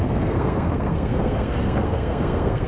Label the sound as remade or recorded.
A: remade